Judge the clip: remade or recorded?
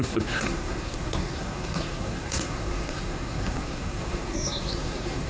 remade